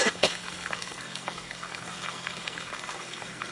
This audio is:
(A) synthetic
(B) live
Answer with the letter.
A